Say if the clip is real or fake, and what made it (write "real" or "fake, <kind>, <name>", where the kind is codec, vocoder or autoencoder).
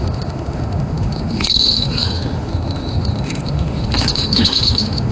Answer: fake, autoencoder, DAC-VAE